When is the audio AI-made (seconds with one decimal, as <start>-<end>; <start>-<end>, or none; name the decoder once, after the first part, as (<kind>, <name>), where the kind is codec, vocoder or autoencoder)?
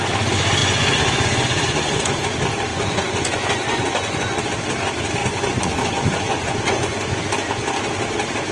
0.6-2.2 (vocoder, Vocos); 2.7-4.4; 5.2-7.2